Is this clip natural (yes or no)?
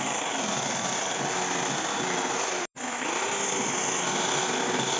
yes